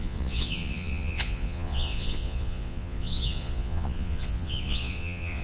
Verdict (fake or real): fake